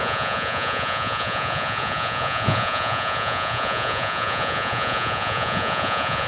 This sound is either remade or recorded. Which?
remade